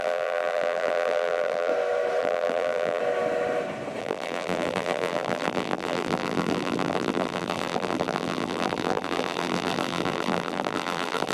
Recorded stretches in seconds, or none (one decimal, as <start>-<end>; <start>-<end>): 1.7-2.2; 3.0-4.0